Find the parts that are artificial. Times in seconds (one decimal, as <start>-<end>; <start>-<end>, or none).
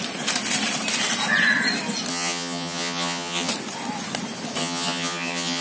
2.1-3.5; 4.6-5.6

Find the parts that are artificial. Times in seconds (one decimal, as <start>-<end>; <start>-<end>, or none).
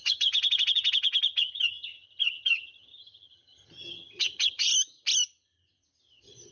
0.0-4.7; 6.0-6.5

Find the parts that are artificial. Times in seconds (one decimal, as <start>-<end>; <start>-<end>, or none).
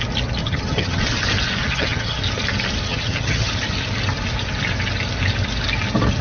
0.4-1.0; 1.6-2.2; 2.9-3.5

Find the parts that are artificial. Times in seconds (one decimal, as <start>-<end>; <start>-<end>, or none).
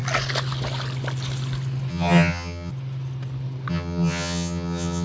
1.9-2.7; 3.7-5.0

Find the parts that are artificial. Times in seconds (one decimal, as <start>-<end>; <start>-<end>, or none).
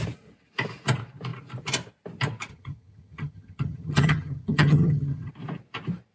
2.5-5.3